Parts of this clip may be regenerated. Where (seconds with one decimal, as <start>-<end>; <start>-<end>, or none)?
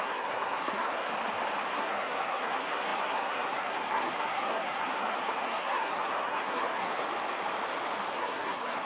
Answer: 0.0-1.1; 1.7-7.0; 8.1-8.9